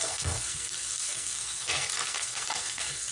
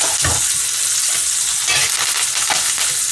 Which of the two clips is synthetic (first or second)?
first